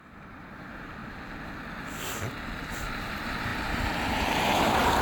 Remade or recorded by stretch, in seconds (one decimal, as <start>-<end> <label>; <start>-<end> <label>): 0.0-1.0 remade; 1.0-2.9 recorded; 2.9-5.0 remade